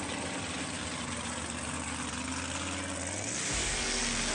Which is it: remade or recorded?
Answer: recorded